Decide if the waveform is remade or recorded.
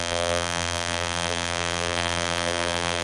remade